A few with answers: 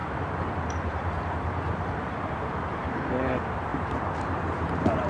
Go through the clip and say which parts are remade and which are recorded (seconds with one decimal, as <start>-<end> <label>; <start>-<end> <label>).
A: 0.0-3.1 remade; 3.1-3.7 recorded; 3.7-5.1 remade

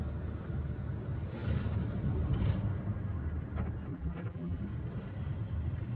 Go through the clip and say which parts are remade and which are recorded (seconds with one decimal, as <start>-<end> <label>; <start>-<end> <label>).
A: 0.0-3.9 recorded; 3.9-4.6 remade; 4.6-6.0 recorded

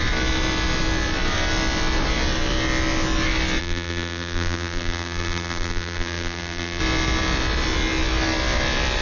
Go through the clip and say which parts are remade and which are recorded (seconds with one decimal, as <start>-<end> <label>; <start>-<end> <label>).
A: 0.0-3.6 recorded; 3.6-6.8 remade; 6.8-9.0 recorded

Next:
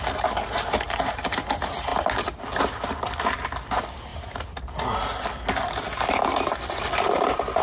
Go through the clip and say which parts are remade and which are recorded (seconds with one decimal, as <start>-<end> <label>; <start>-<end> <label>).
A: 0.0-7.6 recorded

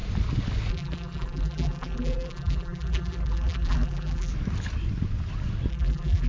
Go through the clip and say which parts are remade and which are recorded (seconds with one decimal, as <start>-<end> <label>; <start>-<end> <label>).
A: 0.0-0.7 recorded; 0.7-4.3 remade; 4.3-5.7 recorded; 5.7-6.3 remade

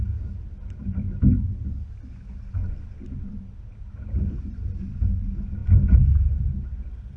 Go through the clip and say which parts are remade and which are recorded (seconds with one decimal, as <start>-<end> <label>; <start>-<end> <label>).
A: 0.0-7.2 recorded

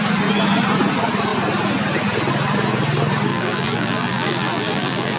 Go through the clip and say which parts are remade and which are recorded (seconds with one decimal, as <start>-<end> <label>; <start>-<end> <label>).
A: 0.0-3.3 recorded; 3.3-5.2 remade

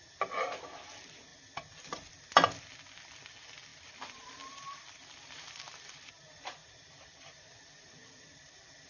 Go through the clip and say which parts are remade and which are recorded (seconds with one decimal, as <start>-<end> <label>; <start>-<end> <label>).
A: 0.0-1.3 recorded; 1.3-2.1 remade; 2.1-3.7 recorded; 3.7-6.0 remade; 6.0-6.6 recorded; 6.6-7.4 remade; 7.4-8.0 recorded; 8.0-8.9 remade